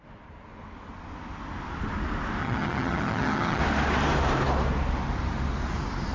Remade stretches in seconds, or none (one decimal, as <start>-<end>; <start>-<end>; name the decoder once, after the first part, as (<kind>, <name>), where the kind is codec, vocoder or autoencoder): 2.4-3.6 (vocoder, HiFi-GAN)